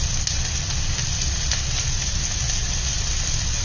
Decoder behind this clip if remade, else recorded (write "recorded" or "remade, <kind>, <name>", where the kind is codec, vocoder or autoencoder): recorded